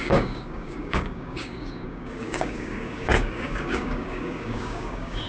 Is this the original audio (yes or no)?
no